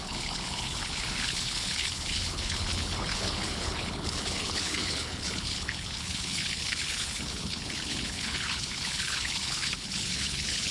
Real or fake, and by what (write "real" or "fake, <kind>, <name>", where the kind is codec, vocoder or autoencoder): fake, codec, HILCodec